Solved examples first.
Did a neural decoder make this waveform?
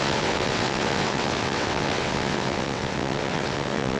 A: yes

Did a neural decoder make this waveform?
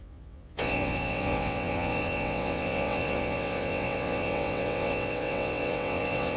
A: yes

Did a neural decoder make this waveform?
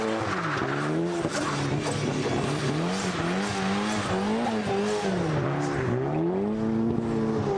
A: no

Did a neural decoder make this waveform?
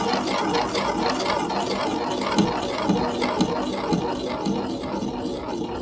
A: no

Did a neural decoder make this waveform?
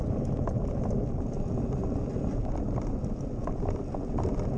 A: no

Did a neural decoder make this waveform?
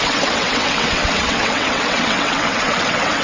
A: yes